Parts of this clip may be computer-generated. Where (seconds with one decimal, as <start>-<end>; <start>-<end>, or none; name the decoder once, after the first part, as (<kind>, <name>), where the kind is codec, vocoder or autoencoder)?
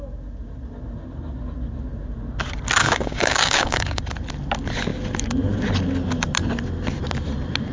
2.8-4.0 (codec, DAC)